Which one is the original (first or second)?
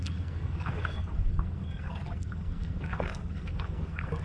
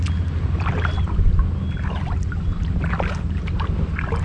second